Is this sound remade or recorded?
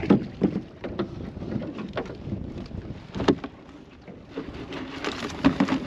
recorded